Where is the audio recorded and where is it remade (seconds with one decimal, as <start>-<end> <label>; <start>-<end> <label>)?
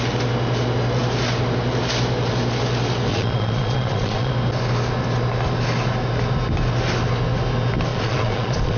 0.0-3.1 recorded; 3.1-4.3 remade; 4.3-7.9 recorded; 7.9-8.8 remade